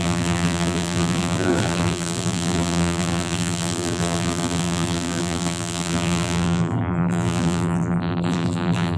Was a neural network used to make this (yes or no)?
yes